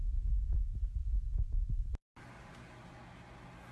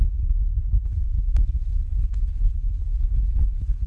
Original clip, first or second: first